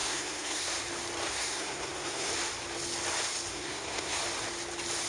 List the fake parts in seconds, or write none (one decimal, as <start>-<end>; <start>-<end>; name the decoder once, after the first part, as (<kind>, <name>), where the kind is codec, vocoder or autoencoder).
0.0-0.7 (codec, SNAC); 1.3-2.3; 3.5-4.2